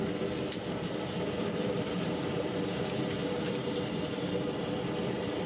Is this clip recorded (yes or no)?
yes